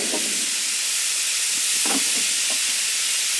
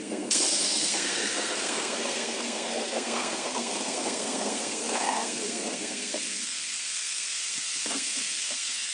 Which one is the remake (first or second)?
second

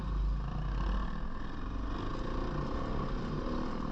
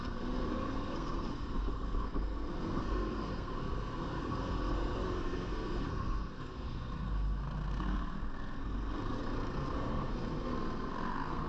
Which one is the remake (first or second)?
second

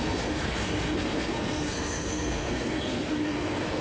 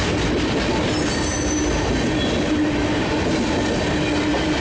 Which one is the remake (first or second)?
first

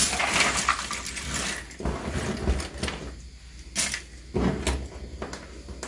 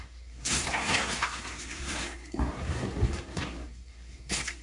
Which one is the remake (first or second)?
second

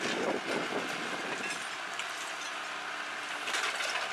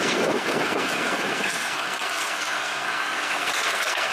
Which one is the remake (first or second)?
second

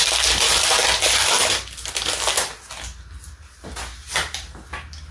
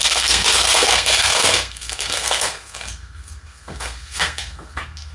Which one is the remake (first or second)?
second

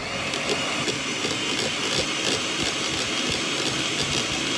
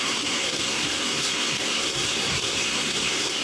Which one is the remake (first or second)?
second